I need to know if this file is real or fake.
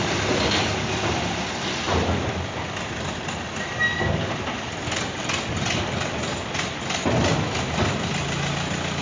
real